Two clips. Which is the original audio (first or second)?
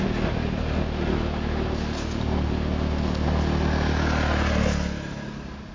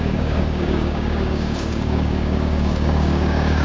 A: first